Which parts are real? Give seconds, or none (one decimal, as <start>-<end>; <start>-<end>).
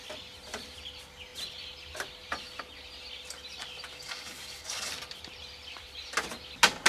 0.0-3.9; 4.9-6.9